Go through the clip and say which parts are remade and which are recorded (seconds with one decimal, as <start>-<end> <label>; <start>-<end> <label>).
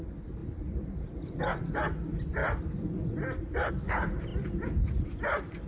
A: 0.0-5.7 recorded